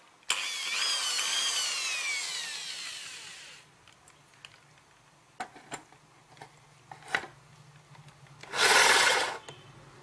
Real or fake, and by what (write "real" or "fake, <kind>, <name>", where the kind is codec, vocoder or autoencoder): real